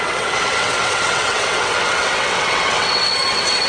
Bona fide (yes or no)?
no